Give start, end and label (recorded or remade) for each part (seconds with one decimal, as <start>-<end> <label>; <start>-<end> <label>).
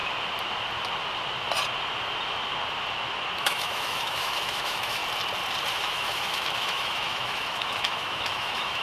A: 0.0-3.4 recorded; 3.4-5.0 remade; 5.0-5.7 recorded; 5.7-8.8 remade